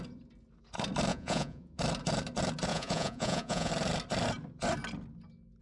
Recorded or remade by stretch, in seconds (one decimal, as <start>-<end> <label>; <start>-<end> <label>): 0.0-1.1 recorded; 1.1-1.8 remade; 1.8-2.7 recorded; 2.7-3.7 remade; 3.7-5.6 recorded